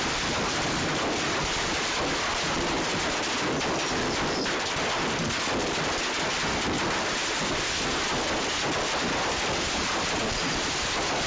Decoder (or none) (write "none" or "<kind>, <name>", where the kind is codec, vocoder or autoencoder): vocoder, BigVGAN v2